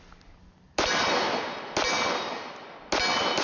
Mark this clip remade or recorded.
recorded